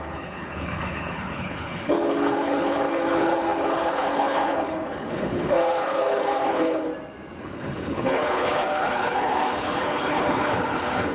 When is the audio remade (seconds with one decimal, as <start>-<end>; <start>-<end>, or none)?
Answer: 0.0-6.9; 7.4-11.1

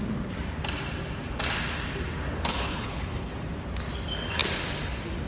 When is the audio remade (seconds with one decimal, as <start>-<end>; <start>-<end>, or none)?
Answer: 2.5-3.3

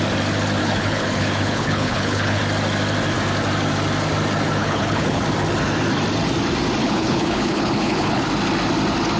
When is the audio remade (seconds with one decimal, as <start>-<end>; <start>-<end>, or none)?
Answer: 0.6-2.4; 4.6-5.2; 6.8-8.3